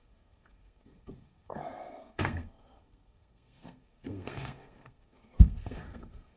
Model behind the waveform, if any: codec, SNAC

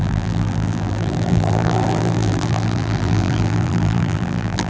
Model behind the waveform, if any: vocoder, BigVGAN v2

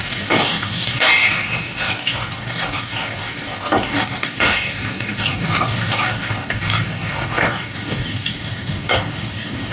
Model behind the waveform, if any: codec, DAC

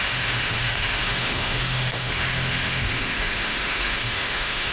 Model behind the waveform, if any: autoencoder, DAC-VAE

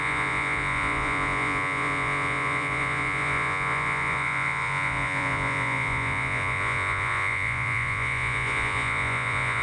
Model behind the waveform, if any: vocoder, Vocos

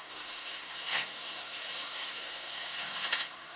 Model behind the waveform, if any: codec, SNAC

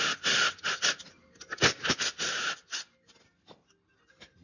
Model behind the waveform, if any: none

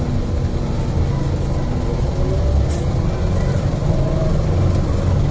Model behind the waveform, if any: none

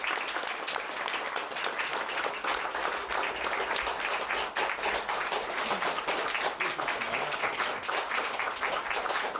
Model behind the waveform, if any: none